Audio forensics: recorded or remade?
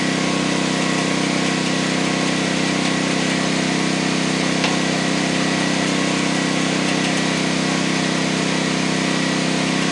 recorded